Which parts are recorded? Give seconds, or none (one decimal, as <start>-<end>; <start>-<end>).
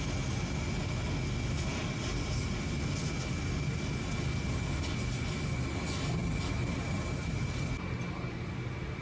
0.0-9.0